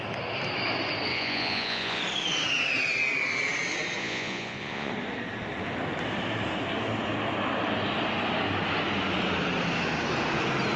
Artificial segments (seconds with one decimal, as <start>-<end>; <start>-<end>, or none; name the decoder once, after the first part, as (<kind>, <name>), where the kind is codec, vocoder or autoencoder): 1.1-2.0 (vocoder, Vocos); 4.0-4.9